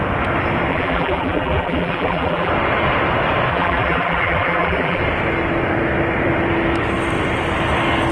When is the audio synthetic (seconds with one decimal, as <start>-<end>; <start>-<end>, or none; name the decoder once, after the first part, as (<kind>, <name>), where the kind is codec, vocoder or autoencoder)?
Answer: 0.7-2.5 (vocoder, BigVGAN v2); 3.5-5.0